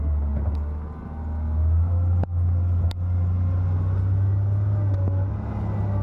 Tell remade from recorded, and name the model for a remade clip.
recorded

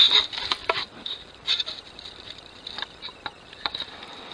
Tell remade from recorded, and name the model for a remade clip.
remade, vocoder, BigVGAN v2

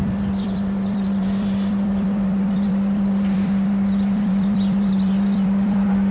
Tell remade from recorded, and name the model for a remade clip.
remade, vocoder, BigVGAN v2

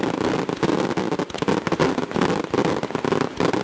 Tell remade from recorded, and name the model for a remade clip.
recorded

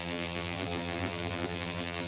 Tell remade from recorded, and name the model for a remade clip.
remade, vocoder, BigVGAN v2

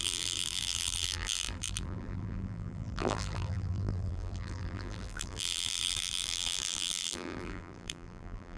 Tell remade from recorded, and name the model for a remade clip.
remade, vocoder, BigVGAN v2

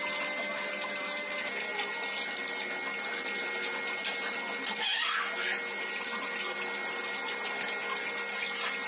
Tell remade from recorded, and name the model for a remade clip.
recorded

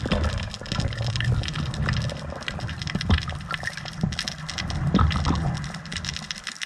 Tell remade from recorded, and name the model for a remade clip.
recorded